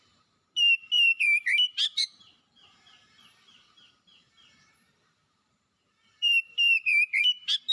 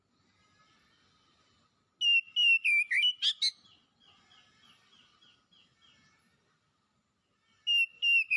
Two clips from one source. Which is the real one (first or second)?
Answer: second